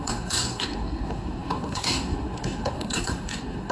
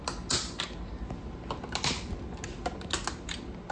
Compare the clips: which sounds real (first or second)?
second